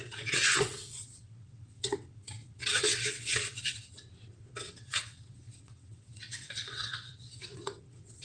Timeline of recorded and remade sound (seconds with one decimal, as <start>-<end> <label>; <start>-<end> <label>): 0.0-8.2 remade